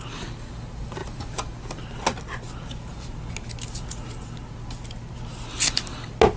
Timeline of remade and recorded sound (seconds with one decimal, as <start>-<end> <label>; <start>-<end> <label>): 0.0-6.4 recorded